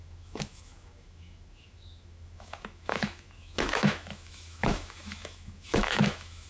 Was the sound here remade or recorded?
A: remade